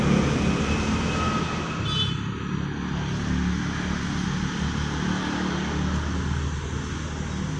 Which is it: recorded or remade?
recorded